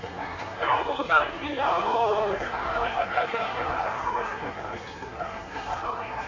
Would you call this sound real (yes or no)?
no